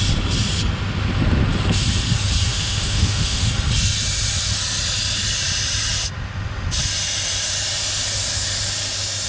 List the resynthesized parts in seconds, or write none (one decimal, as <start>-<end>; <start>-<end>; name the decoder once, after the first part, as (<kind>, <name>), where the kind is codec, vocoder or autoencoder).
2.5-3.5 (autoencoder, DAC-VAE)